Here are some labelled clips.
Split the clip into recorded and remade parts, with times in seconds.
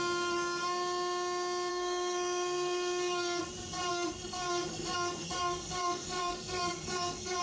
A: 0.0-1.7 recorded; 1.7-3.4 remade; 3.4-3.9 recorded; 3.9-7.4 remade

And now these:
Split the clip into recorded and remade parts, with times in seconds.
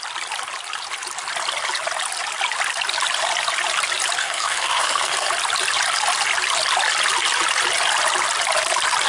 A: 0.0-4.2 recorded; 4.2-5.3 remade; 5.3-9.1 recorded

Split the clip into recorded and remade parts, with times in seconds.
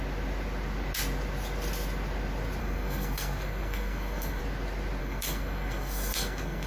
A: 0.0-2.6 recorded; 2.6-4.4 remade; 4.4-5.0 recorded; 5.0-6.7 remade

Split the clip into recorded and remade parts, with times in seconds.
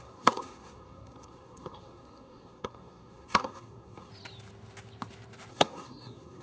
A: 0.0-4.1 remade; 4.1-5.5 recorded; 5.5-6.4 remade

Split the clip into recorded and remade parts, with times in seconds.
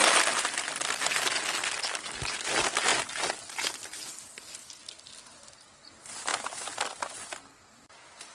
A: 0.0-8.3 recorded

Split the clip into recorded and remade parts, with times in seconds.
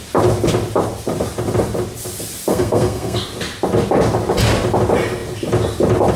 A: 0.0-2.5 recorded; 2.5-3.2 remade; 3.2-6.2 recorded